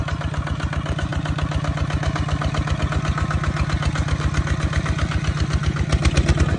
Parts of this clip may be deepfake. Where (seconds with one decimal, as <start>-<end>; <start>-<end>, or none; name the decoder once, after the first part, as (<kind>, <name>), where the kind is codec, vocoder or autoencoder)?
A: none